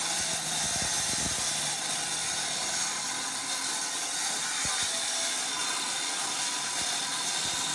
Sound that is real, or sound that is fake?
real